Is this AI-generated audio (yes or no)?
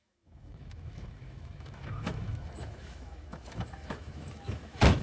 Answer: yes